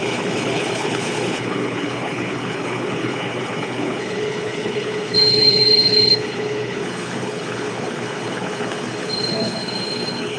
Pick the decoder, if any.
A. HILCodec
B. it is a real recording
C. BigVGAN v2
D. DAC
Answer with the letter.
A